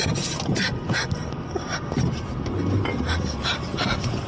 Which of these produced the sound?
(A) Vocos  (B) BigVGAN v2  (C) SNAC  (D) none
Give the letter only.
D